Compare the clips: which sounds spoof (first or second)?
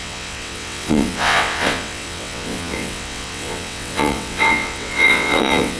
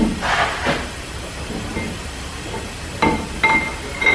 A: first